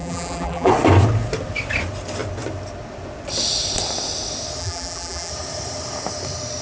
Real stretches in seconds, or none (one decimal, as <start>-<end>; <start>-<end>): 0.7-4.6; 5.3-6.6

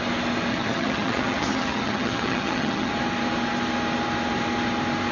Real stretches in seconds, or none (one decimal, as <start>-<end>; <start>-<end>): 0.0-0.5; 2.9-5.1

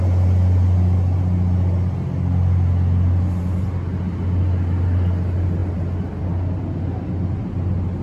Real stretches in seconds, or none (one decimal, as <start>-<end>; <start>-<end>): 0.0-8.0

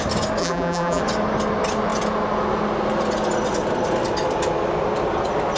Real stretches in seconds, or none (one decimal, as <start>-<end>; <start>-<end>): 0.0-0.4; 1.0-5.6

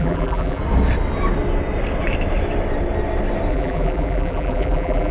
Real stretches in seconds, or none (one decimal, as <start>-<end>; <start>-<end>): 0.6-3.5

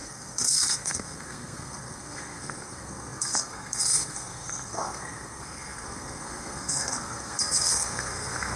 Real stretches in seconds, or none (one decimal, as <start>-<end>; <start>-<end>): none

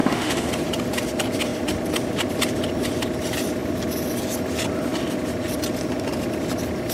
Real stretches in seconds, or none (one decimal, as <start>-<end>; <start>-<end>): 0.5-6.9